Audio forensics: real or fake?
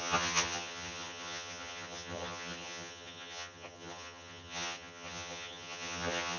fake